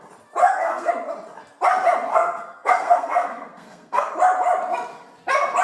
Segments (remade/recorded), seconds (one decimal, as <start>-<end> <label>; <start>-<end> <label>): 0.0-0.4 recorded; 0.4-0.9 remade; 0.9-2.1 recorded; 2.1-4.1 remade; 4.1-5.6 recorded